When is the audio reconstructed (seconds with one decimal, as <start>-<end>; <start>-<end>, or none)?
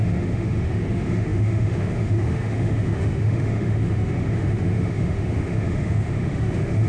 0.0-6.9